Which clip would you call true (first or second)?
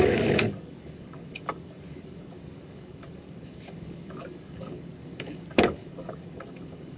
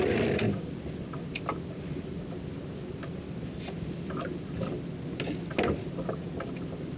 second